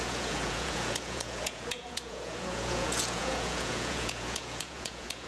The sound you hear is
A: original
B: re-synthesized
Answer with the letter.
B